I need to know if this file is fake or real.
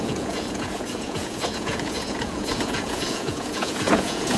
fake